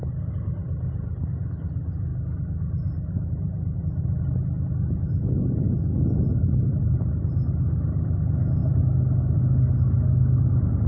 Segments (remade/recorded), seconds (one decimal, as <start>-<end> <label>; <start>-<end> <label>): 0.0-10.9 recorded